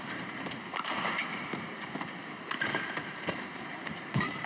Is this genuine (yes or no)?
no